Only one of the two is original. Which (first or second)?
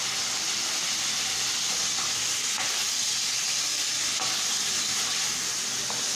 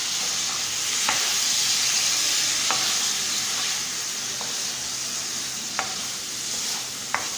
first